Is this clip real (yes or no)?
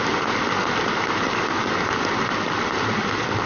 yes